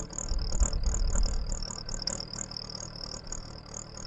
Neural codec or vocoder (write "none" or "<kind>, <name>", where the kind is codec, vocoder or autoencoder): none